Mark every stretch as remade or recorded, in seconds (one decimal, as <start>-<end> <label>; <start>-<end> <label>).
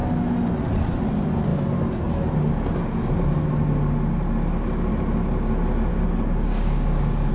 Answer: 0.0-5.9 recorded; 5.9-7.3 remade